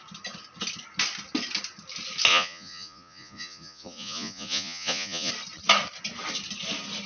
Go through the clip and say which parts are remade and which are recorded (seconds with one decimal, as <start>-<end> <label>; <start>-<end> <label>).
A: 0.0-2.3 recorded; 2.3-5.3 remade; 5.3-7.1 recorded